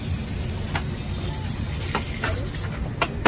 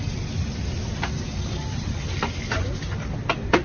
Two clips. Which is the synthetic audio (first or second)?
second